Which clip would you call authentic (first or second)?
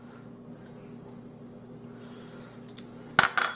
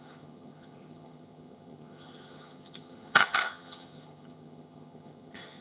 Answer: first